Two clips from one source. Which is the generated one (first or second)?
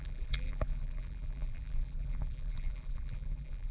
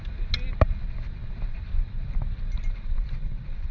first